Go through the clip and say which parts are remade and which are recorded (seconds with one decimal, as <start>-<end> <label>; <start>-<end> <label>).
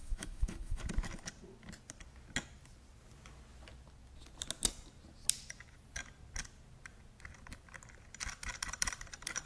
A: 0.0-0.8 remade; 0.8-9.5 recorded